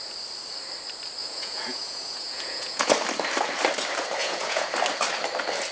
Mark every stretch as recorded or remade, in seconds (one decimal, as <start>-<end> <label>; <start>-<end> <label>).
0.0-1.2 recorded; 1.2-2.9 remade; 2.9-4.2 recorded; 4.2-4.7 remade; 4.7-5.7 recorded